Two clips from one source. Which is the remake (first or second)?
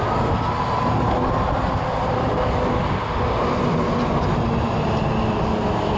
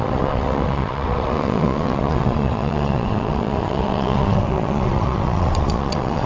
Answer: second